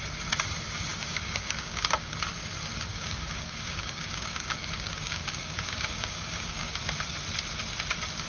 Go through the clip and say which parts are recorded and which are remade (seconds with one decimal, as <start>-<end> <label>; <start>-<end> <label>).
0.0-0.9 recorded; 0.9-2.1 remade; 2.1-2.9 recorded; 2.9-6.7 remade; 6.7-8.3 recorded